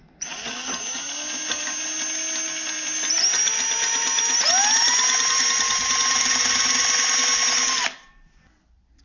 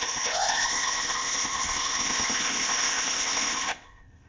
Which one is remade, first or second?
second